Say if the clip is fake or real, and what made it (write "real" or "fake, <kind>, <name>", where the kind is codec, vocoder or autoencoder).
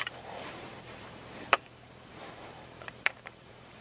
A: fake, vocoder, BigVGAN v2